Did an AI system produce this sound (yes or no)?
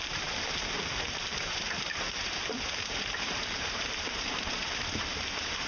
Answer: yes